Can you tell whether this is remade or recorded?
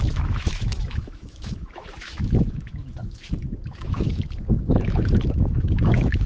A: remade